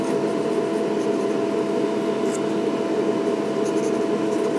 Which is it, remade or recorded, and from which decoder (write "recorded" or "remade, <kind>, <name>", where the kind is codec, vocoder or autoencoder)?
recorded